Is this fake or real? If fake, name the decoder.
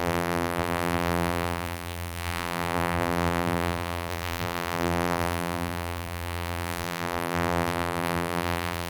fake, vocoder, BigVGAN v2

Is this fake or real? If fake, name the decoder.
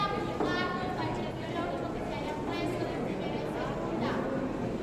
real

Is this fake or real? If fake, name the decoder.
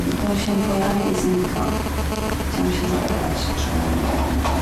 real